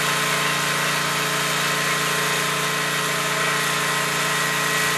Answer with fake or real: real